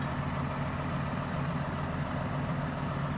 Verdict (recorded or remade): recorded